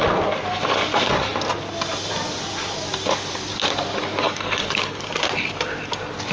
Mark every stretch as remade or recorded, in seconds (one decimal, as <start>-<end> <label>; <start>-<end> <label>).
0.0-4.0 recorded; 4.0-5.1 remade; 5.1-6.3 recorded